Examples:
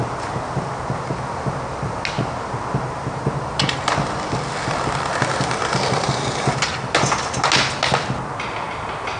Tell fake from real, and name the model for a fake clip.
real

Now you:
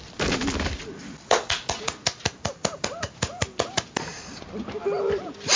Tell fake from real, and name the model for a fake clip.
real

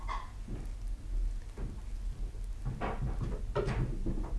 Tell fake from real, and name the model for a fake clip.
real